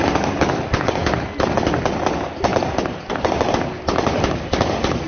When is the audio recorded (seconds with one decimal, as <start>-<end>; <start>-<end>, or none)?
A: 0.0-5.1